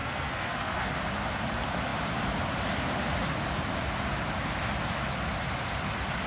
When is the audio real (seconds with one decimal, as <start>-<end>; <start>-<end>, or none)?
0.9-6.3